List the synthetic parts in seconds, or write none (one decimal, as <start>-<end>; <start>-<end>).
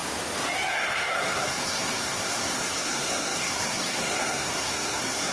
0.7-5.3